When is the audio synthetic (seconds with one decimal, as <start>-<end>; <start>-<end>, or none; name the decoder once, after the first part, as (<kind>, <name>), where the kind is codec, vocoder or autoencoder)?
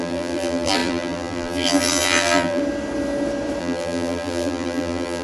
0.0-2.6 (vocoder, BigVGAN v2); 3.6-5.2